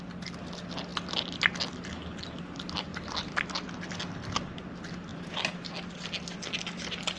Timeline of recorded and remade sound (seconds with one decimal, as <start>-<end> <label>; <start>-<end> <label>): 0.0-2.9 recorded; 2.9-3.5 remade; 3.5-5.1 recorded; 5.1-5.7 remade; 5.7-7.2 recorded